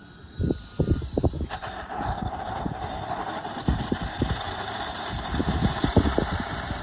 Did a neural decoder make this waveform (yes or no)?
yes